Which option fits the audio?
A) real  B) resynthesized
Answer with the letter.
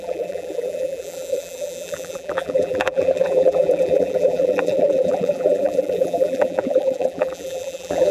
B